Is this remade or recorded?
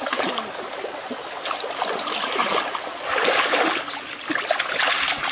recorded